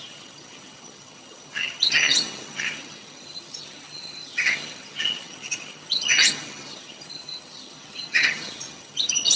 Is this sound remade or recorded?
remade